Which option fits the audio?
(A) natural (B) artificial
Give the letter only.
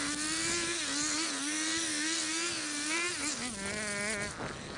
A